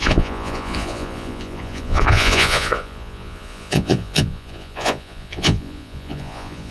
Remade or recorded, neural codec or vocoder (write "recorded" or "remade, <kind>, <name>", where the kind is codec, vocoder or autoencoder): remade, vocoder, Vocos